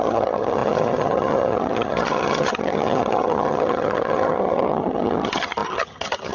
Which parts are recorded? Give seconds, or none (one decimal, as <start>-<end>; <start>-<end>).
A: none